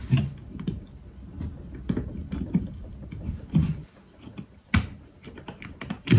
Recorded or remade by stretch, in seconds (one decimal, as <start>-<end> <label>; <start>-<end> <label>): 0.0-6.2 recorded